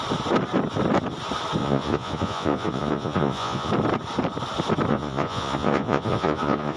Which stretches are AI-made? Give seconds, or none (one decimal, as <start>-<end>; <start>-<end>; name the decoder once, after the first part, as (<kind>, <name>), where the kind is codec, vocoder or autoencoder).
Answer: 1.6-3.7 (vocoder, Vocos); 4.9-6.8